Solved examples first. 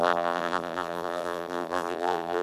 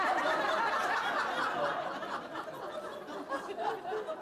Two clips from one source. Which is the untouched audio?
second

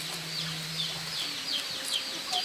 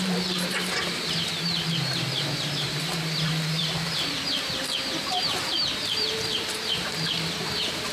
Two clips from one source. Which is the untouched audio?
first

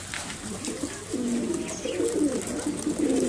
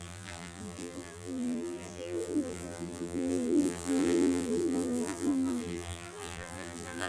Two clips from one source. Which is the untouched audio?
first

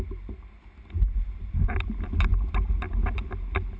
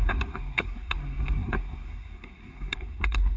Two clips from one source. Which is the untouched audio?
first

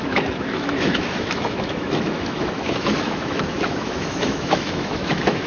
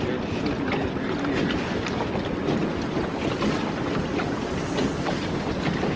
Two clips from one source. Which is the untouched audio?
second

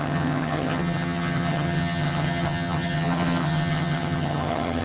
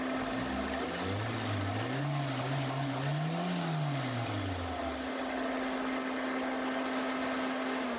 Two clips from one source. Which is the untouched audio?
second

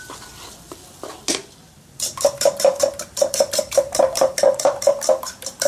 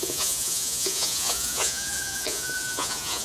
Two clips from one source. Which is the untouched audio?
first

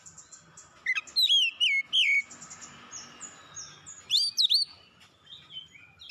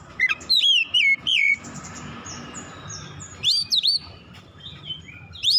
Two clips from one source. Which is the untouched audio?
first